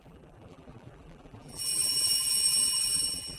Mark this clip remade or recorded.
remade